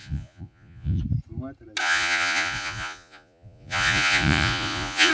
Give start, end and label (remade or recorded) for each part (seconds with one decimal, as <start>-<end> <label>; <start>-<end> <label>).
0.0-1.0 remade; 1.0-1.8 recorded; 1.8-5.1 remade